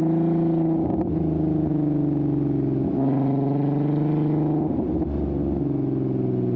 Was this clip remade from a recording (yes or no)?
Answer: no